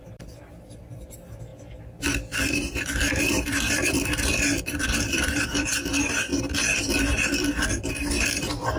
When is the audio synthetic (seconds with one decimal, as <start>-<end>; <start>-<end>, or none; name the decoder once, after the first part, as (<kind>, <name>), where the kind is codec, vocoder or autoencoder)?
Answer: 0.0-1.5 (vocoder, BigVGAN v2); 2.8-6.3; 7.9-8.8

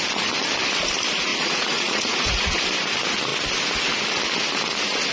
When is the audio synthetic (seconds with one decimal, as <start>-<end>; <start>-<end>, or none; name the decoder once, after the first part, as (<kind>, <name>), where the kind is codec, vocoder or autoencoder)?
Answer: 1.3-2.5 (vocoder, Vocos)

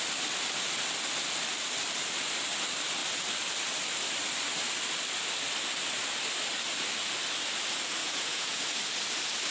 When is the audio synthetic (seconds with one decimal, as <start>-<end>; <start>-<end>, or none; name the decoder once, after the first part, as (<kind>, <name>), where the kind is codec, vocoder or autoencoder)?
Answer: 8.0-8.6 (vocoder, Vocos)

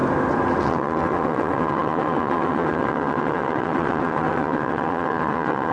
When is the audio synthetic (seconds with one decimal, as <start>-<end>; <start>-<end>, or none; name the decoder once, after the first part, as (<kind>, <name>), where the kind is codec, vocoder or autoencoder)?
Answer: 0.6-5.7 (vocoder, WaveNeXt)

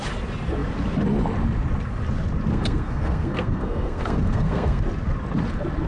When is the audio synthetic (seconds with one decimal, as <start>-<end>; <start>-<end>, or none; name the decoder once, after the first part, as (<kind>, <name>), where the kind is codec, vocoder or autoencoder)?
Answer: 2.5-4.8 (codec, SNAC)

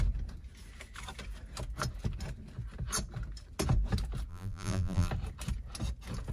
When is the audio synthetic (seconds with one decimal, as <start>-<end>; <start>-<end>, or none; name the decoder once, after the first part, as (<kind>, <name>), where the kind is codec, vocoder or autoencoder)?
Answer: 4.3-5.1 (vocoder, BigVGAN v2)